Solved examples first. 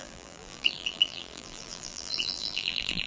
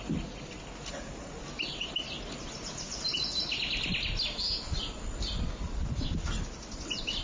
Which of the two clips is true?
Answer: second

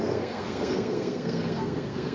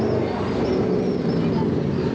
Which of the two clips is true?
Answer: second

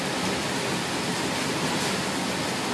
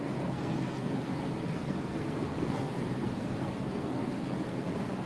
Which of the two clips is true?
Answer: first